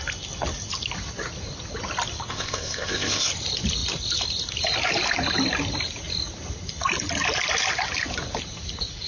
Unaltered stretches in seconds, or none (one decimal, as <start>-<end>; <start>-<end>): 0.0-2.3; 3.3-9.1